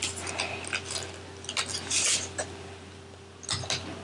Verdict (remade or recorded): recorded